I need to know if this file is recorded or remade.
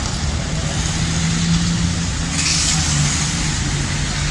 recorded